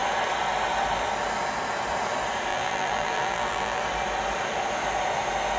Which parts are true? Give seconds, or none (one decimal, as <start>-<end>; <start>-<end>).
0.0-2.5; 3.8-5.6